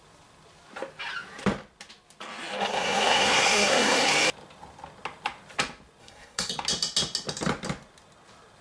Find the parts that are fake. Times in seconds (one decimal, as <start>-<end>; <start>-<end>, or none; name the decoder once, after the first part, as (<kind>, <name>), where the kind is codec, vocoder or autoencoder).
2.7-4.1 (codec, SNAC); 6.0-6.5